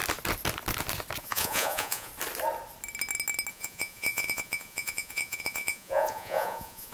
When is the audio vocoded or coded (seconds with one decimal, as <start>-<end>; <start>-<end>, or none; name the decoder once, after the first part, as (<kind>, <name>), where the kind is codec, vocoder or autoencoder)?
1.2-2.1 (vocoder, Vocos); 3.5-6.9